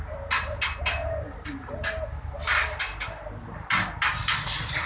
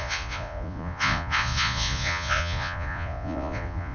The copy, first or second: second